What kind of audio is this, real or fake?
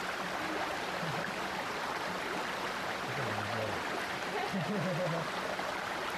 real